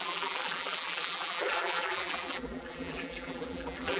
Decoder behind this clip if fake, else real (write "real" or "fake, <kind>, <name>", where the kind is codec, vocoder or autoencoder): fake, vocoder, BigVGAN v2